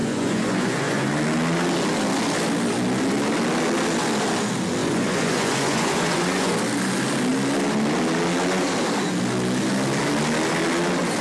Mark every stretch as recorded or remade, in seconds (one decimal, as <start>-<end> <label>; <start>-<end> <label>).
0.0-1.1 remade; 1.1-4.8 recorded; 4.8-6.5 remade; 6.5-11.2 recorded